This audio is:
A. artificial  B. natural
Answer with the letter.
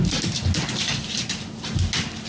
B